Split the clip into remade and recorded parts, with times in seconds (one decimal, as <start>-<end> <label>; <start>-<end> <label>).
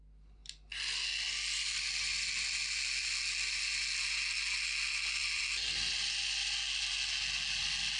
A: 0.0-8.0 recorded